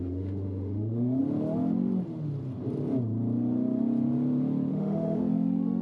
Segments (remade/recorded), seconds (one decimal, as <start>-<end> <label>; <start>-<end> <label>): 0.0-1.2 remade; 1.2-4.7 recorded; 4.7-5.8 remade